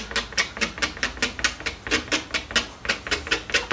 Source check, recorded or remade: recorded